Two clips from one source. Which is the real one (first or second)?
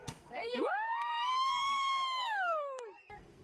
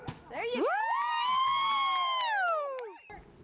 second